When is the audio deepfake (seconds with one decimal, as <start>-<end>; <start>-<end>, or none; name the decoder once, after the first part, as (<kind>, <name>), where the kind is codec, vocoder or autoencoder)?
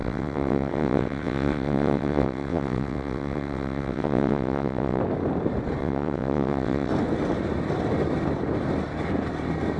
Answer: 0.0-5.0 (vocoder, WaveNeXt); 5.8-6.9